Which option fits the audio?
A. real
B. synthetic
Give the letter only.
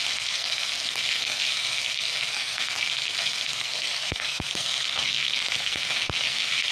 B